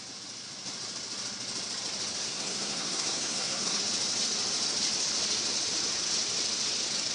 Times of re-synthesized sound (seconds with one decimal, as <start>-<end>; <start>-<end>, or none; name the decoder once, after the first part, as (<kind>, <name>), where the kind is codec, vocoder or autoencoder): 2.2-3.8 (codec, SNAC)